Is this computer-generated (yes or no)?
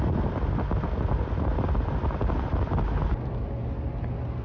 no